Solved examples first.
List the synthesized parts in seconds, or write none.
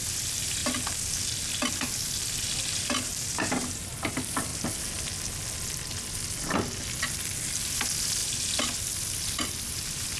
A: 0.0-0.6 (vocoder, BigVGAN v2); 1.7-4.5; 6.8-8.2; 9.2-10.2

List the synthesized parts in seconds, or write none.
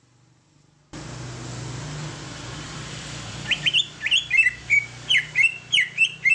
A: 2.0-4.6 (vocoder, BigVGAN v2)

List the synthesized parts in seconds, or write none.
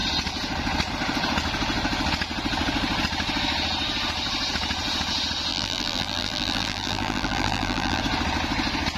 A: 5.5-8.0 (vocoder, BigVGAN v2)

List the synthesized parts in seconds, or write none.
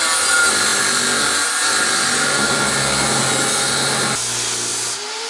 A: 4.7-5.3 (vocoder, BigVGAN v2)